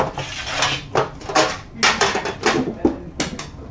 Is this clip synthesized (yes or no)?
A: no